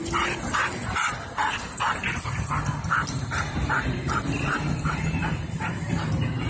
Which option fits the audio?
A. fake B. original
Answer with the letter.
A